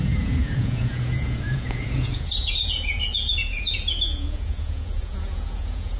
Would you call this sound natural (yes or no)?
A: no